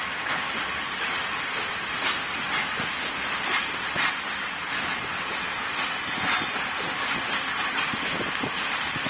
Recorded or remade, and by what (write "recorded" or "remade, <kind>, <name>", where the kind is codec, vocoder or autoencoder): recorded